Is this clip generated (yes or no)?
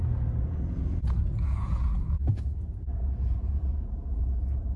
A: yes